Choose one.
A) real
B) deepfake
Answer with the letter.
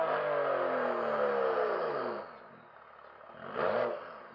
A